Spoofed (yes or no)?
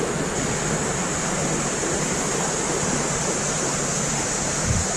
no